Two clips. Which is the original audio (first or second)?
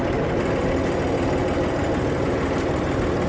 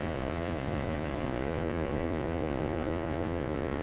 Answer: first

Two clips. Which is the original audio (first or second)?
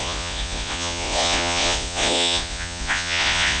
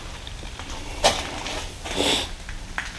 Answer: second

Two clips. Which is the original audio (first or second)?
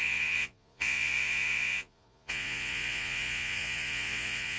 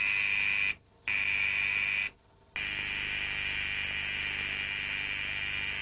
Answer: second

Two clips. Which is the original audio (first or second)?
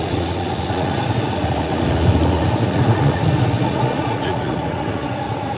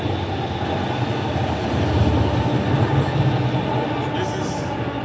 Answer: second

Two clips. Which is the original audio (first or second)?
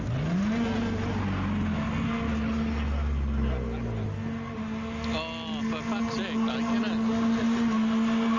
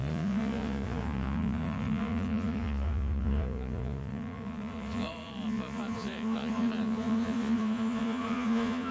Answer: first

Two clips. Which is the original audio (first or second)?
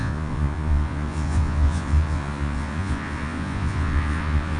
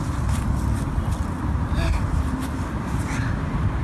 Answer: second